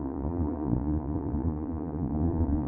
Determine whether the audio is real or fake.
fake